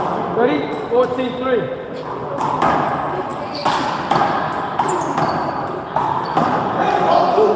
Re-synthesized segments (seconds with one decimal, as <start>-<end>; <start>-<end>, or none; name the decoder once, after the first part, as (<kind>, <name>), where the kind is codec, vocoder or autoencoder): none